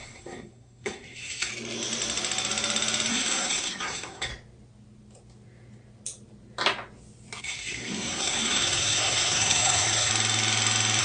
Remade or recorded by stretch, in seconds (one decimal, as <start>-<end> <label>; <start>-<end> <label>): 0.0-1.5 remade; 1.5-3.1 recorded; 3.1-4.3 remade; 4.3-7.4 recorded; 7.4-10.1 remade; 10.1-11.0 recorded